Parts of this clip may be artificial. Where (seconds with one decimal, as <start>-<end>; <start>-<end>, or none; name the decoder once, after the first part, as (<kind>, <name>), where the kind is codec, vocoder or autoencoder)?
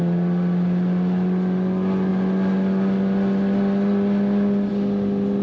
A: none